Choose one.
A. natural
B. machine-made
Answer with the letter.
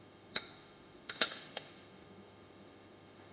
B